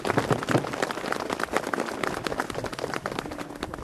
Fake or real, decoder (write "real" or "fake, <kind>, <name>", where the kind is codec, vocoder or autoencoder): real